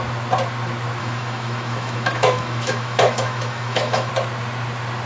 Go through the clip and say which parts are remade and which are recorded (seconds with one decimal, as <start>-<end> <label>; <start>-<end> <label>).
0.0-1.0 recorded; 1.0-4.1 remade; 4.1-5.1 recorded